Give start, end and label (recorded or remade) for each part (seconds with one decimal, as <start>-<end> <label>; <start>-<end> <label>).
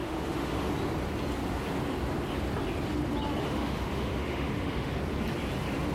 0.0-0.7 remade; 0.7-3.4 recorded; 3.4-4.9 remade; 4.9-5.9 recorded